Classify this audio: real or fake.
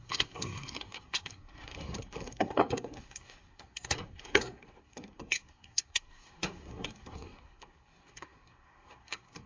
fake